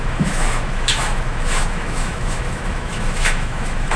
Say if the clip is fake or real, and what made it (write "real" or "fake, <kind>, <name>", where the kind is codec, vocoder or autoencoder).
fake, autoencoder, DAC-VAE